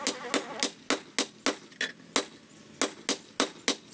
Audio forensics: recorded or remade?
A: recorded